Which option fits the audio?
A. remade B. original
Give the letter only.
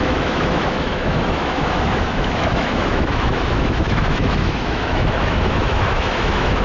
A